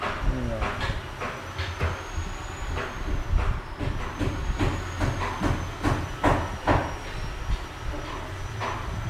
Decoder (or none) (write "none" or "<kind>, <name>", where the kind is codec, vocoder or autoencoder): none